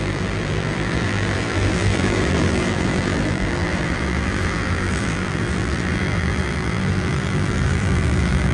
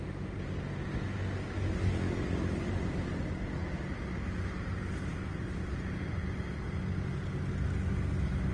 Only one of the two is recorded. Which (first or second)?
second